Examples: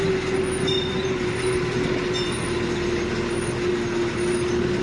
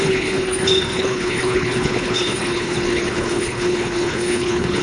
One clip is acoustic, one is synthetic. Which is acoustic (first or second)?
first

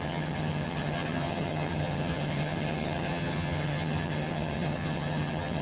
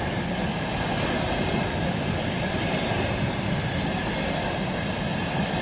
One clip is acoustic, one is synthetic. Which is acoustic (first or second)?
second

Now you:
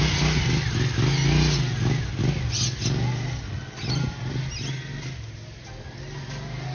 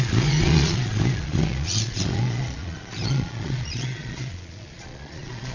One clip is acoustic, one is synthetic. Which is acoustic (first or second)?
first